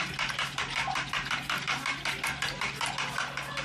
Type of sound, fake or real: real